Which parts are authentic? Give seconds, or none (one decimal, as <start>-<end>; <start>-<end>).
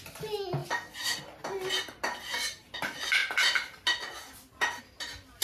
0.0-5.4